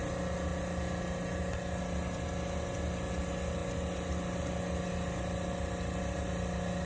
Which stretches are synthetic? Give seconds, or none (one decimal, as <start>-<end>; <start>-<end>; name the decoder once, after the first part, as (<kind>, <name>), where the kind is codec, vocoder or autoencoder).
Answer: none